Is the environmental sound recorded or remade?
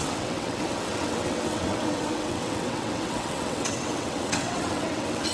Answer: remade